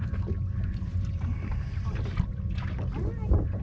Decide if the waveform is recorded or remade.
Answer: recorded